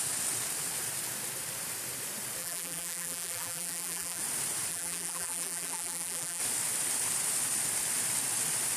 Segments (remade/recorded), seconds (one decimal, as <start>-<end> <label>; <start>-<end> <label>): 0.0-2.4 recorded; 2.4-4.2 remade; 4.2-4.7 recorded; 4.7-6.4 remade; 6.4-8.8 recorded